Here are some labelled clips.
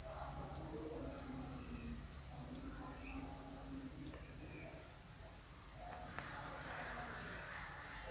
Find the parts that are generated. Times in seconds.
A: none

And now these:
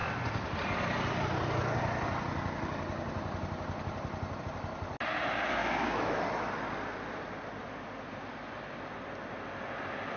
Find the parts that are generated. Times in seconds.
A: 5.6-6.2 (autoencoder, DAC-VAE)